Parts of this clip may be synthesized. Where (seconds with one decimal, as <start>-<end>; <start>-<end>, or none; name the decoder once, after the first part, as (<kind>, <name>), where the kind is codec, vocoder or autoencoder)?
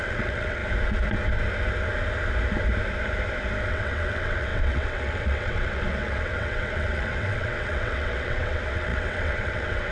0.0-0.6 (vocoder, WaveNeXt); 3.7-9.9